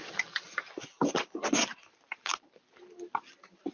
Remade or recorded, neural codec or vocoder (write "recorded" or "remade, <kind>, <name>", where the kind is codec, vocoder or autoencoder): recorded